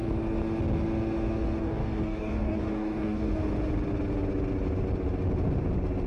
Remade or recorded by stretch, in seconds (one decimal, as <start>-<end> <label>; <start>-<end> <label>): 0.0-1.6 recorded; 1.6-3.4 remade; 3.4-6.1 recorded